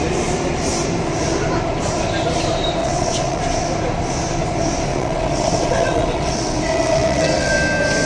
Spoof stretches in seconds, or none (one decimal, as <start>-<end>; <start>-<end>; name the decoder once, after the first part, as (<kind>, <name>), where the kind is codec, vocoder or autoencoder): 2.8-3.4 (vocoder, WaveNeXt); 4.9-7.5